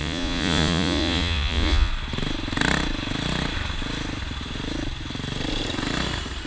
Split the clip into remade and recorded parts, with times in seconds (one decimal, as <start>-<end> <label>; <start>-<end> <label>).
0.0-1.9 remade; 1.9-6.5 recorded